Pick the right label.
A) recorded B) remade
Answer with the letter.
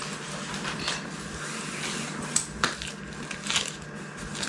A